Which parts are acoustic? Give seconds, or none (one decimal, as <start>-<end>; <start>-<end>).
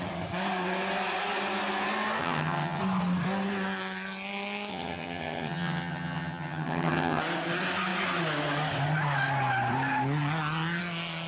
0.0-2.2; 2.8-4.7; 7.2-11.3